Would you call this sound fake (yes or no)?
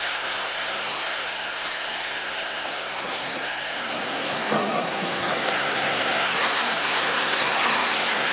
yes